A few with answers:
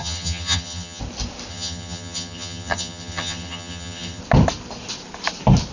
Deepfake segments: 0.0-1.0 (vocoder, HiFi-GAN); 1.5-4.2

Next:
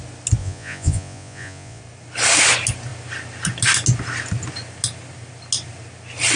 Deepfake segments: 0.4-1.8 (vocoder, Vocos)

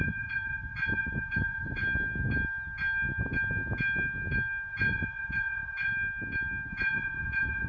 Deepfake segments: 0.0-1.8 (vocoder, Vocos); 4.7-5.9; 6.7-7.7

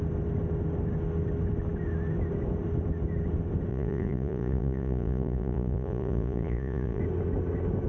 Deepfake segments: 3.7-7.0 (vocoder, Vocos)